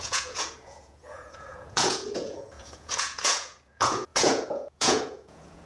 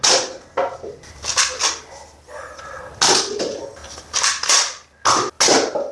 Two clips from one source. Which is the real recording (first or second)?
second